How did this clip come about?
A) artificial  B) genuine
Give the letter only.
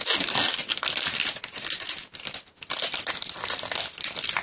B